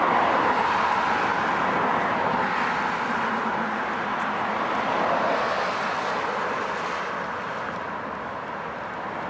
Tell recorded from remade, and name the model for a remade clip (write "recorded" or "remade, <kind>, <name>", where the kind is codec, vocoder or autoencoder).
recorded